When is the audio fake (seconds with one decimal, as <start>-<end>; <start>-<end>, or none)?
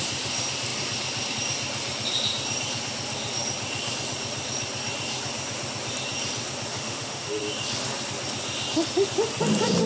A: 6.7-7.4